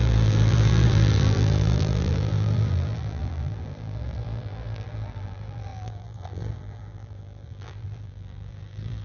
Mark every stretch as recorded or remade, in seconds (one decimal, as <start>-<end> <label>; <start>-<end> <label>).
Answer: 0.0-9.0 remade